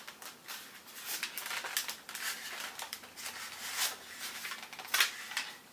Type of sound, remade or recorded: recorded